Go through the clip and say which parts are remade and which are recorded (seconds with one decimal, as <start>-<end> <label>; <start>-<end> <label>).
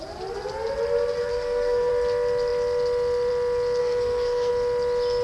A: 0.0-1.3 recorded; 1.3-1.9 remade; 1.9-3.8 recorded; 3.8-4.5 remade; 4.5-5.2 recorded